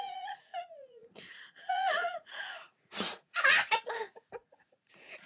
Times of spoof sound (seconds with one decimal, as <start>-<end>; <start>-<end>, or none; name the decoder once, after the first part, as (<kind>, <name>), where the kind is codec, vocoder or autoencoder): 0.0-5.3 (vocoder, Vocos)